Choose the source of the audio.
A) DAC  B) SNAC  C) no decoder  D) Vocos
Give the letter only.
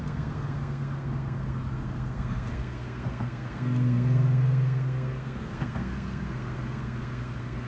B